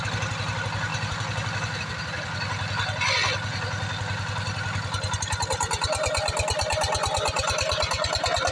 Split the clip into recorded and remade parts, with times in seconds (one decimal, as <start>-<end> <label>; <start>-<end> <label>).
0.0-0.9 recorded; 0.9-1.8 remade; 1.8-8.5 recorded